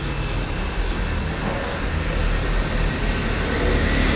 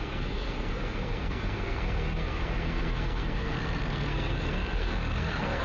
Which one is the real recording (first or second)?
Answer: first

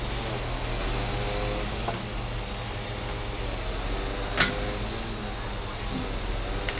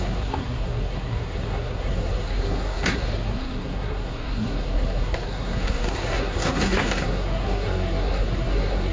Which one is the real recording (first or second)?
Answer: first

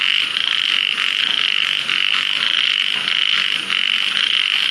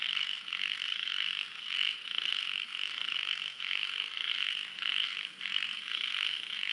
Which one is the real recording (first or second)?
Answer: first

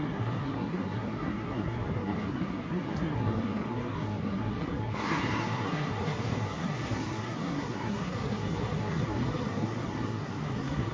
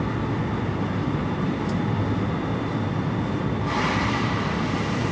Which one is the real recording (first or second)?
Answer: second